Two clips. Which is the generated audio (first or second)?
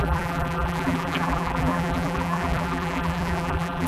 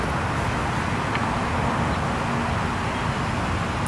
first